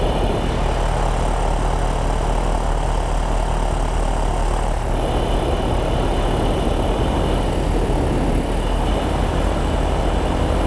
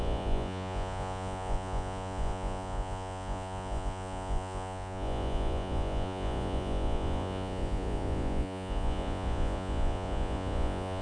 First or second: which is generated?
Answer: second